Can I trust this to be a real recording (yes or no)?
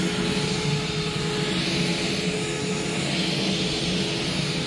yes